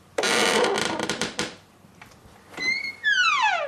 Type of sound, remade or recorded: recorded